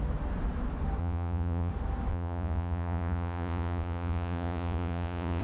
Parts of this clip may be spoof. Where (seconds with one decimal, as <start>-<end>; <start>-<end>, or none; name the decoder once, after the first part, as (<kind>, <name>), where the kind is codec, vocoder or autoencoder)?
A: 1.0-1.7 (vocoder, Vocos); 2.1-5.4